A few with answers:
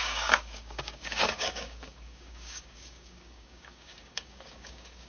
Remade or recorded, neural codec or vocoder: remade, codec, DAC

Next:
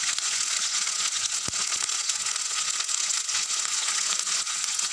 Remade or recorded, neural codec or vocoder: remade, vocoder, Vocos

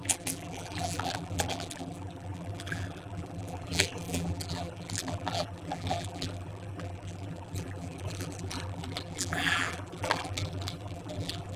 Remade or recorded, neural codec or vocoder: remade, vocoder, BigVGAN v2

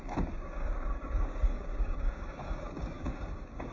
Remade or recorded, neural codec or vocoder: remade, codec, DAC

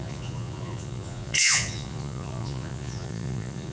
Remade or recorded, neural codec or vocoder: remade, vocoder, Vocos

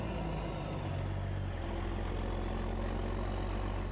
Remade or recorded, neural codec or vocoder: recorded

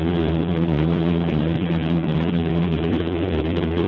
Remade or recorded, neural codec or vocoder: remade, vocoder, Vocos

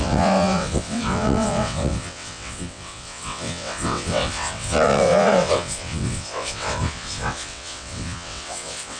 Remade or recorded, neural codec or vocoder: remade, vocoder, WaveNeXt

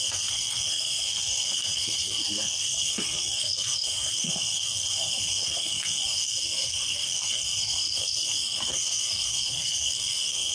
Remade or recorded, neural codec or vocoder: remade, codec, SNAC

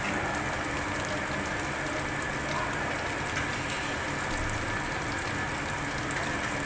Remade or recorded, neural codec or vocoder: recorded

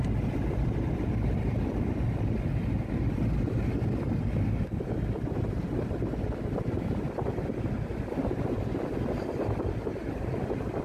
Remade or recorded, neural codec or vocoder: recorded